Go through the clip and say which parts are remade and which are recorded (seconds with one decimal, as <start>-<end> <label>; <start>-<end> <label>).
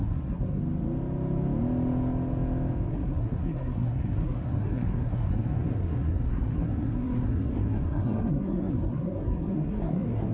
0.0-0.6 remade; 0.6-2.9 recorded; 2.9-10.3 remade